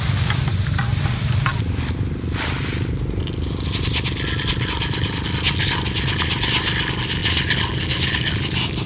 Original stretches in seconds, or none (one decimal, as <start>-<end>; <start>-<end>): 0.0-8.9